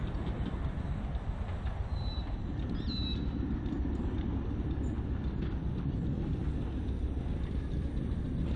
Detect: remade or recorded recorded